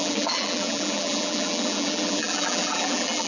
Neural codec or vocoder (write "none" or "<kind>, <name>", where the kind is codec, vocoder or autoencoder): vocoder, BigVGAN v2